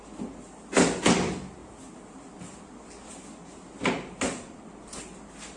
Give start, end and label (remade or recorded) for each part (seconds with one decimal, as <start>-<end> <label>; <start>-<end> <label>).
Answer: 0.0-5.6 recorded